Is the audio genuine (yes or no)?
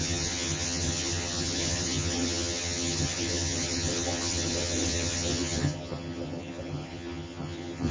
no